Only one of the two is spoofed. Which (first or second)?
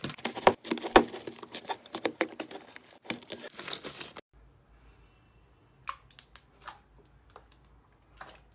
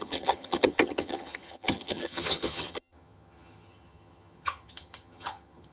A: second